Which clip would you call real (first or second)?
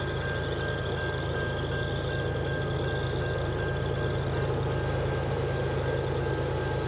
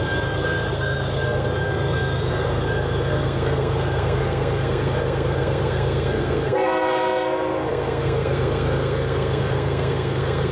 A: first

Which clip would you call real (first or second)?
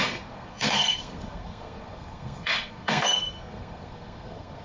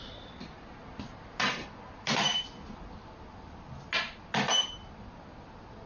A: second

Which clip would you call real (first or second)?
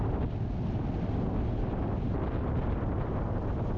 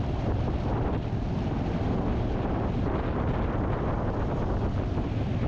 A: first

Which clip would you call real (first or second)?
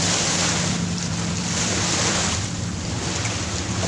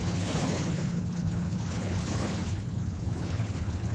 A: first